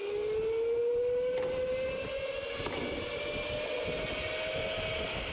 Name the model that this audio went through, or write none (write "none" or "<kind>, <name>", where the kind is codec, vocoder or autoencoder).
none